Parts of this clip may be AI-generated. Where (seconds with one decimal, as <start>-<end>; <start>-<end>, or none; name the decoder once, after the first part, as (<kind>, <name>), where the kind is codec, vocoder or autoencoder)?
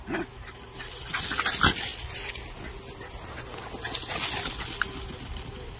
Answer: none